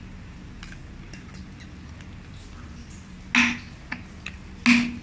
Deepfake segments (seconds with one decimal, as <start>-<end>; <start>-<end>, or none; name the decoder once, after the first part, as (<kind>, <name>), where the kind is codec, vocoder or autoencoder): none